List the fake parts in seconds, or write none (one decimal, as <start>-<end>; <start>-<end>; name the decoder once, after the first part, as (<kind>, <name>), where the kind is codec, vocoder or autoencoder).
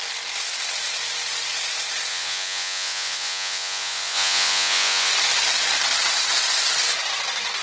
2.1-5.1 (vocoder, Vocos)